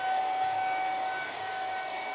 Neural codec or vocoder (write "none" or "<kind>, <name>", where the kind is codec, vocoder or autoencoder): codec, DAC